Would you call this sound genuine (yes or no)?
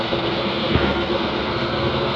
no